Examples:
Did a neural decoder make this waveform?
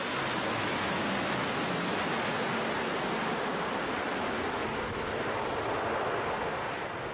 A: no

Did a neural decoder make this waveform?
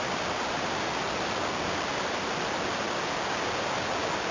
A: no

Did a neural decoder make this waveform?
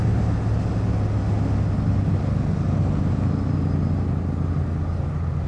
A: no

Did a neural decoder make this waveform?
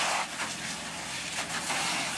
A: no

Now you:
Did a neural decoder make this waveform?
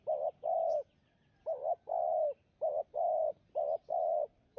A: no